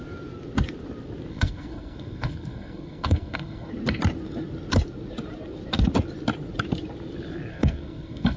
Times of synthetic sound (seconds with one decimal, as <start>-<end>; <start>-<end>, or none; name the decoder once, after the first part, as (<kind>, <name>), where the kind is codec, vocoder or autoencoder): 1.3-3.7 (codec, SNAC); 7.5-8.4

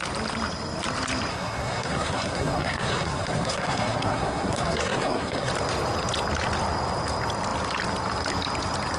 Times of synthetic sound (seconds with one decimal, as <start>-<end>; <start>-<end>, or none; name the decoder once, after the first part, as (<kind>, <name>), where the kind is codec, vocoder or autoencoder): 1.3-5.5 (codec, SNAC)

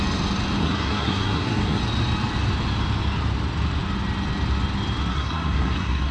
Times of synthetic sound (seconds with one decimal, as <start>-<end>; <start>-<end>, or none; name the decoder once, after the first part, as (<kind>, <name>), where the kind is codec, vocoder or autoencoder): 0.6-1.8 (codec, SNAC); 5.1-6.1

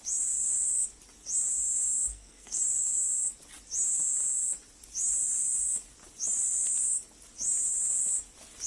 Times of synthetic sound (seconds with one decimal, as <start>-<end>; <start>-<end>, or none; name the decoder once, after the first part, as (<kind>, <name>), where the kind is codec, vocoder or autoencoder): 2.1-2.6 (codec, SNAC)